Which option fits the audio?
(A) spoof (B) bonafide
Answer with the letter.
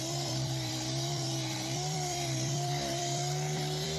A